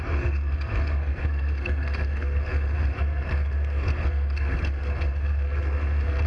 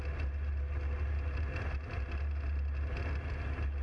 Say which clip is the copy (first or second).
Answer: first